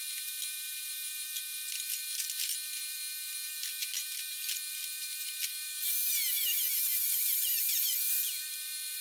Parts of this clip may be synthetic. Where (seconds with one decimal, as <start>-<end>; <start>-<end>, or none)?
none